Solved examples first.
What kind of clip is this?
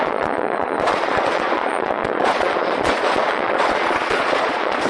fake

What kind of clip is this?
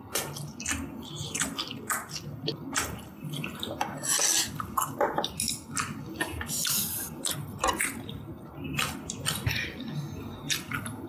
real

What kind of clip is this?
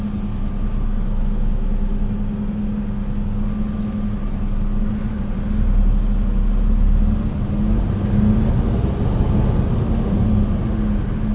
real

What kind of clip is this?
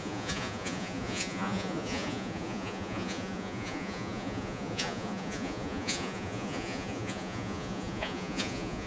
fake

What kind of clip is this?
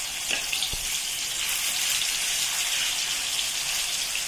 real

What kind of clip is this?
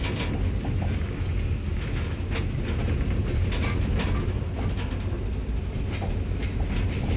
real